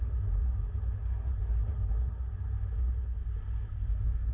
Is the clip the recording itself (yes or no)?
yes